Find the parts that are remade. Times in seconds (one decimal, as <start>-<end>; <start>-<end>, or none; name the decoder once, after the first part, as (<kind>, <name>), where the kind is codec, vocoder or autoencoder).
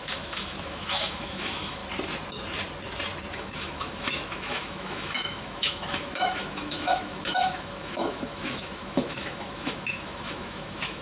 0.0-1.8 (autoencoder, DAC-VAE); 3.3-11.0